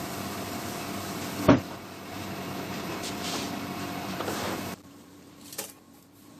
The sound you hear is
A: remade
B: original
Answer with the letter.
A